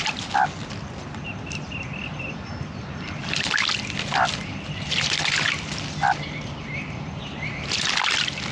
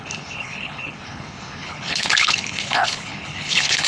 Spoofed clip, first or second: second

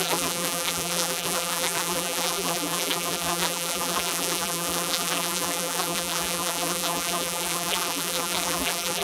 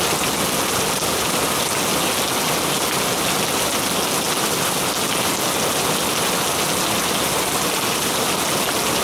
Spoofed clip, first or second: first